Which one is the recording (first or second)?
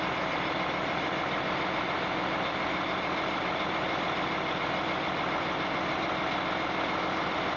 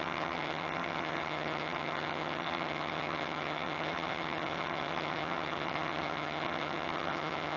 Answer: first